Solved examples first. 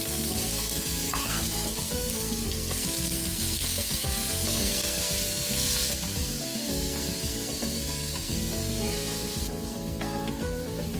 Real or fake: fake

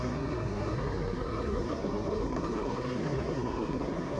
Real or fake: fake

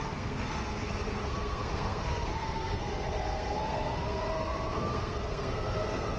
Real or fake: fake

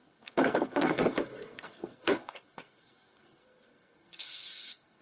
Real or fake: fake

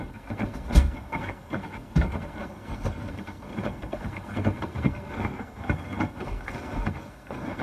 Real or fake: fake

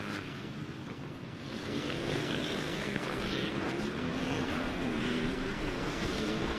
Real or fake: fake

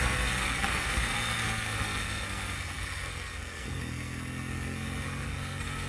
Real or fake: fake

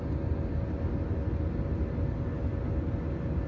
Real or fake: real